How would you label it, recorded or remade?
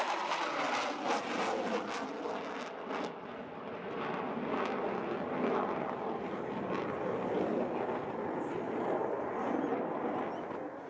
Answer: recorded